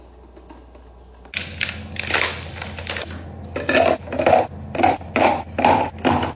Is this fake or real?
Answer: real